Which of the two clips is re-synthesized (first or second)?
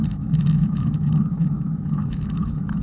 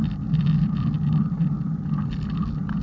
first